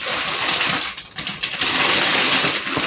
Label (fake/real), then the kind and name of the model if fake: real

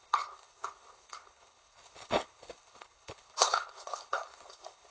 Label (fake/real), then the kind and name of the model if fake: fake, codec, HILCodec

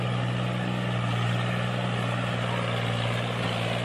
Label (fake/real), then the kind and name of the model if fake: real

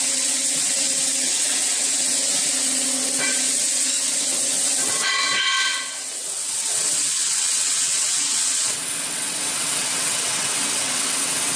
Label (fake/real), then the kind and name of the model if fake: fake, vocoder, WaveNeXt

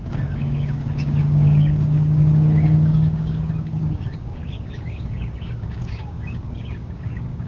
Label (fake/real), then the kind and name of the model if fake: fake, codec, DAC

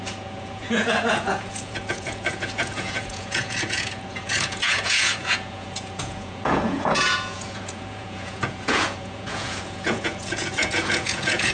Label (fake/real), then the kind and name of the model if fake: fake, vocoder, Vocos